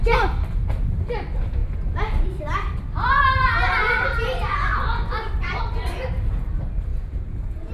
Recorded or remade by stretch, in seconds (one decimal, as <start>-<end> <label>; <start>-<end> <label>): 0.0-6.9 recorded; 6.9-7.7 remade